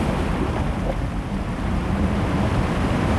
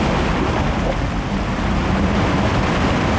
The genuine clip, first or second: second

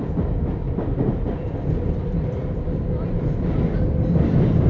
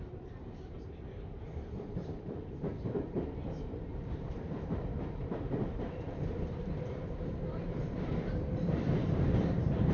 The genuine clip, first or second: first